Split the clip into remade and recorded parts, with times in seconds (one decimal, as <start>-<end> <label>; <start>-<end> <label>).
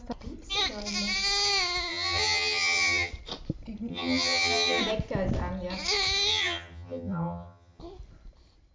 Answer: 0.0-1.9 recorded; 1.9-3.1 remade; 3.1-3.9 recorded; 3.9-4.8 remade; 4.8-6.3 recorded; 6.3-7.8 remade; 7.8-8.7 recorded